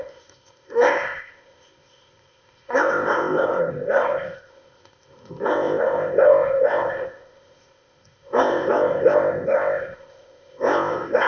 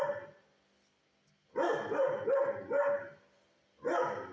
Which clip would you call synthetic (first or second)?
first